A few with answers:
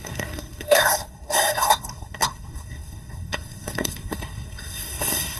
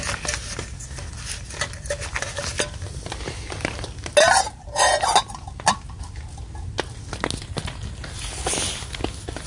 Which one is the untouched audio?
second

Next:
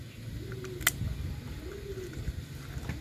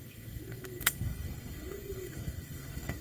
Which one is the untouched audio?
first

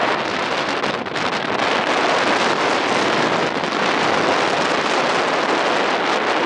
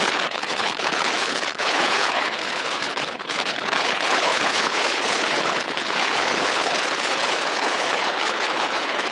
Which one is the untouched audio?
first